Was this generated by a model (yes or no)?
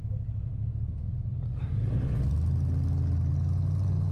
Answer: no